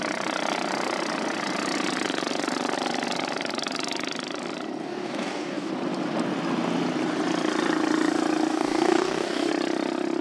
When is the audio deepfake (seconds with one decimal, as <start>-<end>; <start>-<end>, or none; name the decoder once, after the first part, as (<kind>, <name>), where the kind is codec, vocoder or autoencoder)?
4.8-5.7 (codec, DAC); 8.5-9.5